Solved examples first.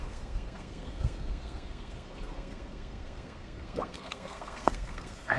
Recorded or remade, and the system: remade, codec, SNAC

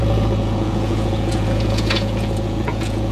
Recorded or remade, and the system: remade, vocoder, Vocos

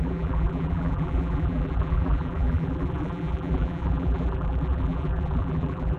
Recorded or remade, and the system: remade, vocoder, BigVGAN v2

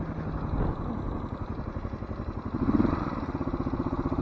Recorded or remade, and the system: recorded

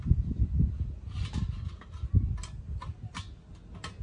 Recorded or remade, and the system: recorded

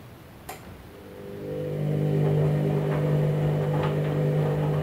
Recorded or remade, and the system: remade, vocoder, BigVGAN v2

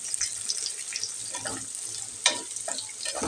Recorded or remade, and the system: recorded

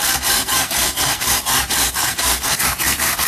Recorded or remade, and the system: remade, codec, SNAC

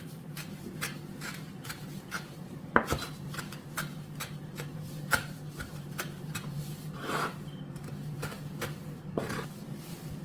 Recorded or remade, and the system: remade, vocoder, BigVGAN v2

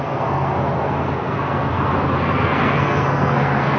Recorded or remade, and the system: remade, codec, SNAC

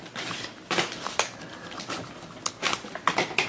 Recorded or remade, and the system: remade, vocoder, BigVGAN v2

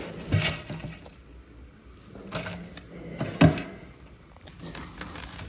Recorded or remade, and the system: recorded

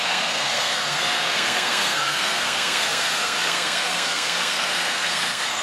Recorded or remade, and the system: remade, codec, SNAC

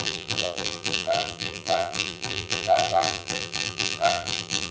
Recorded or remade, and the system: remade, vocoder, BigVGAN v2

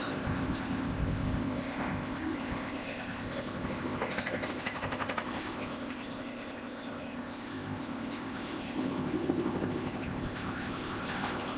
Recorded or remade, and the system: remade, codec, ZipCodec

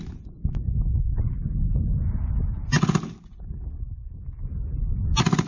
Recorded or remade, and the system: recorded